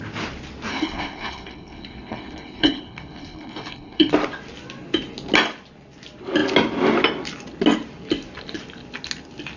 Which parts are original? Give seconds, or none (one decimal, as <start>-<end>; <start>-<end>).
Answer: 0.0-0.7; 4.1-9.6